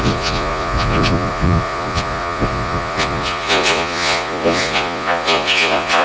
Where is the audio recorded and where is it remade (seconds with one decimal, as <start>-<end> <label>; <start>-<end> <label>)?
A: 0.0-6.0 remade